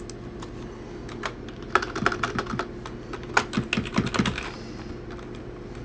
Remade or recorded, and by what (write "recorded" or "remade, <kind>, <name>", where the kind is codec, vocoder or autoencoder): recorded